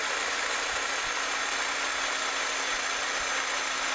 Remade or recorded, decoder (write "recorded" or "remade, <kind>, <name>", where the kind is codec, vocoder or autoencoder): recorded